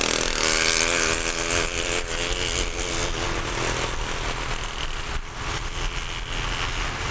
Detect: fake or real real